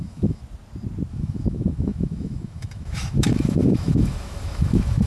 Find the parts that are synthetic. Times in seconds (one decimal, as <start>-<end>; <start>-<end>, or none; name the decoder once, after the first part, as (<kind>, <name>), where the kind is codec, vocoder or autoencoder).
0.0-0.4 (autoencoder, DAC-VAE); 1.1-5.1